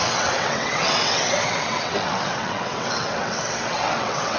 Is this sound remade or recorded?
remade